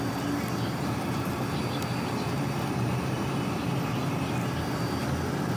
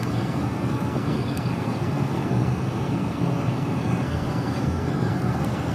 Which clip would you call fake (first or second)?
second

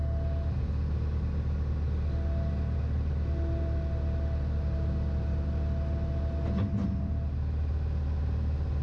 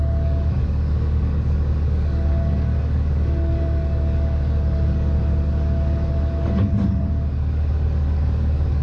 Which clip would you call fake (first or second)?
second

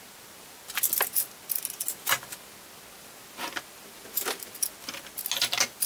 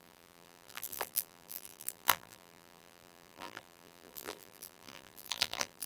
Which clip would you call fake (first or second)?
second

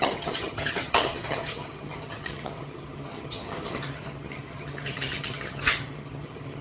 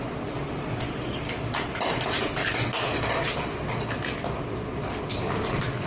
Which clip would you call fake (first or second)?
first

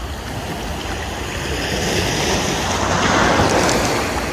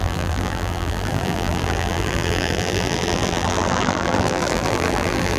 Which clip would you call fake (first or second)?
second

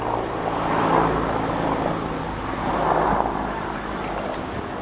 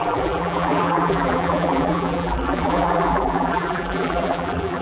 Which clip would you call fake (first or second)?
second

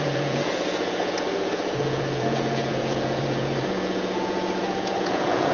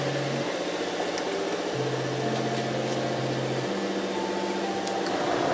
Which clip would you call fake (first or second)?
first